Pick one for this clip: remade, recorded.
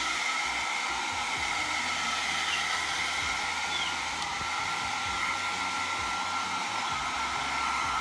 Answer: recorded